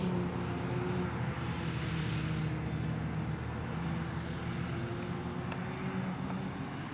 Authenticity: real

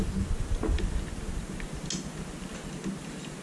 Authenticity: real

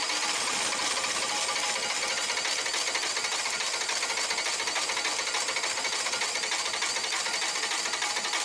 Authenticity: real